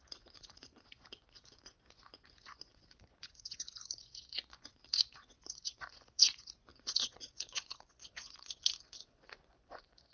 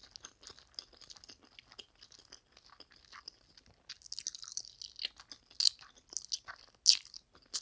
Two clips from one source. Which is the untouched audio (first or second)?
second